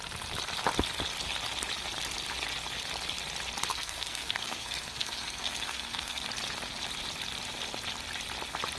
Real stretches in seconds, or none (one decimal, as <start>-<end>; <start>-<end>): 0.0-3.7; 6.2-8.8